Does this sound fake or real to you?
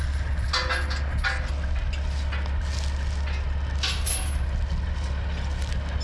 real